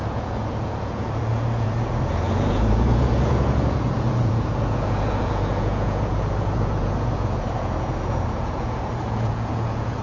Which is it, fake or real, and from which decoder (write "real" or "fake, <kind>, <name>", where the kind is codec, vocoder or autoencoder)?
fake, vocoder, Vocos